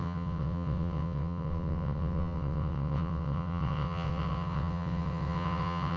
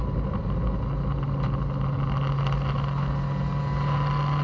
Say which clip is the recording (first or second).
second